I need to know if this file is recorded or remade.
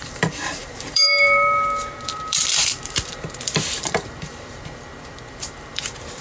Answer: remade